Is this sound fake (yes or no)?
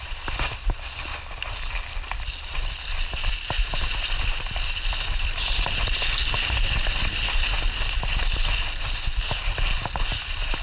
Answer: no